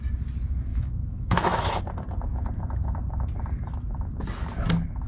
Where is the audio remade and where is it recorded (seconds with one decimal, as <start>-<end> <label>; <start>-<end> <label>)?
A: 0.0-0.7 recorded; 0.7-1.8 remade; 1.8-5.1 recorded

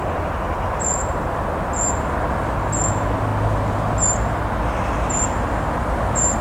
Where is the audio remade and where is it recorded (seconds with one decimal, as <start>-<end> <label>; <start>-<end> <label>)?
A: 0.0-6.4 recorded